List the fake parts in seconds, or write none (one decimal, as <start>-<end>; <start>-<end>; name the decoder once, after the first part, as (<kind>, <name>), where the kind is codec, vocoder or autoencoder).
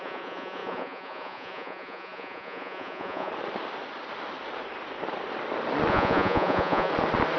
0.0-3.3 (vocoder, Vocos); 5.9-6.9